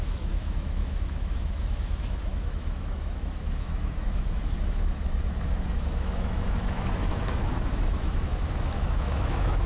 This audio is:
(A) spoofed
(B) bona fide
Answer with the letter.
A